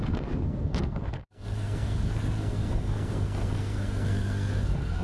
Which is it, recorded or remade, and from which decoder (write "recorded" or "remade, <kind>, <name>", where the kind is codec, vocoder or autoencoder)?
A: remade, codec, SNAC